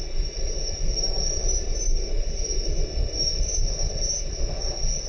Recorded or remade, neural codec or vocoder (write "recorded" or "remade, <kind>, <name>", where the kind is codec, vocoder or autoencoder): recorded